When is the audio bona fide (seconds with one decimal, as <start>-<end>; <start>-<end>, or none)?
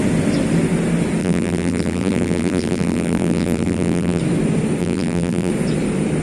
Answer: 0.0-1.2; 4.2-4.8; 5.5-6.2